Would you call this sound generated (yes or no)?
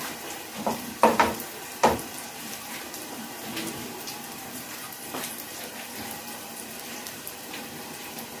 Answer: yes